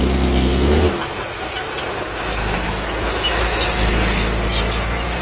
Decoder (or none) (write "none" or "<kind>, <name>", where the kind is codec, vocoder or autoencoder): none